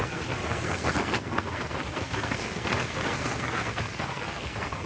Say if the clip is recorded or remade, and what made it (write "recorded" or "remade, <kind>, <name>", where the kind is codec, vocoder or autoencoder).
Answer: remade, codec, SNAC